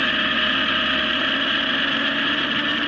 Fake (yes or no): yes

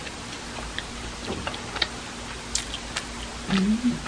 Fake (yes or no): no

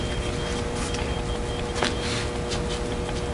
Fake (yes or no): no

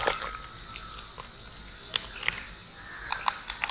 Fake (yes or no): no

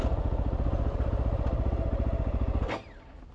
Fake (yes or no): no